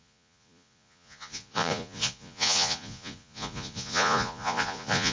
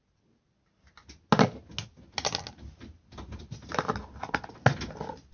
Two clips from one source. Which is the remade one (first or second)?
first